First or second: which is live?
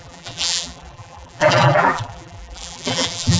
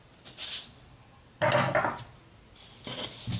second